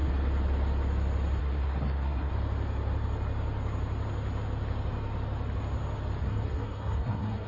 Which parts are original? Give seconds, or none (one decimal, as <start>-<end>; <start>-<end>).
0.0-1.4; 2.3-6.2